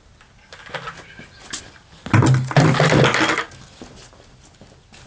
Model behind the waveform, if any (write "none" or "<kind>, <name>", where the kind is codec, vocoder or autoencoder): none